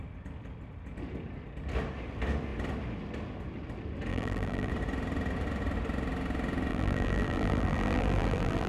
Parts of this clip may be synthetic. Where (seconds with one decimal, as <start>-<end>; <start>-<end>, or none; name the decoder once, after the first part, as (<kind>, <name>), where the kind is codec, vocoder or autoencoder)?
4.1-4.7 (vocoder, BigVGAN v2); 6.7-8.7